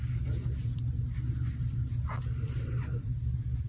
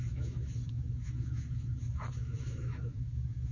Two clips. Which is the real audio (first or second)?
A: first